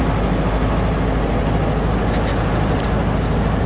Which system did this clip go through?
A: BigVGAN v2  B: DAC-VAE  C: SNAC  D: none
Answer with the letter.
D